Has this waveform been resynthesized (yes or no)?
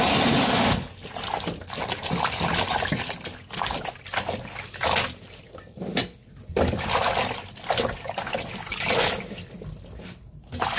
no